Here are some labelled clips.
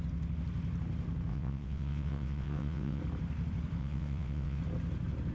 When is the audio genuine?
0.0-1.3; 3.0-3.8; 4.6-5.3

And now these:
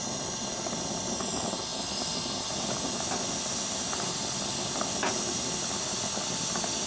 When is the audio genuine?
0.0-6.9

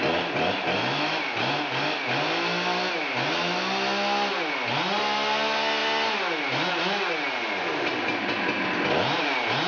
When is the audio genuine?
0.0-9.7

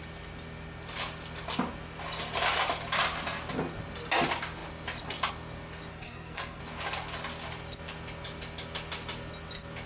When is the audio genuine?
0.0-5.9; 6.6-9.9

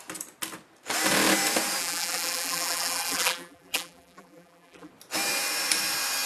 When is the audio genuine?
0.0-1.8; 4.9-6.3

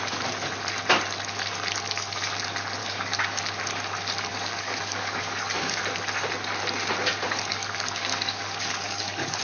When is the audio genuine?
0.0-2.8; 3.4-4.3; 5.8-7.5

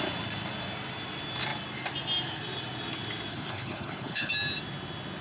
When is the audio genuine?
0.0-3.3; 4.3-5.2